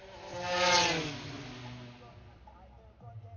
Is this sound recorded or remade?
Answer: recorded